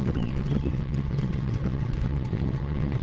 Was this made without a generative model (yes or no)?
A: no